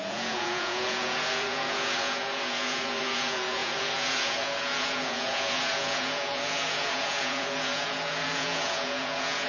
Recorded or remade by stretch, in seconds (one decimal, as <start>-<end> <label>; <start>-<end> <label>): 0.0-9.5 remade